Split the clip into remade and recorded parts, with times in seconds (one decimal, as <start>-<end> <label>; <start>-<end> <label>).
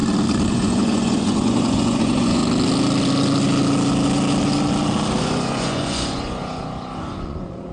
0.0-0.5 recorded; 0.5-2.4 remade; 2.4-5.2 recorded; 5.2-7.7 remade